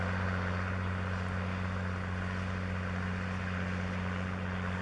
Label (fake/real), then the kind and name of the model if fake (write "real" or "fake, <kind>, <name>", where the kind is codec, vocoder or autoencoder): real